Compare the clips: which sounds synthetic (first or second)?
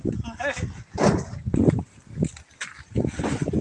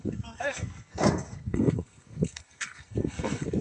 second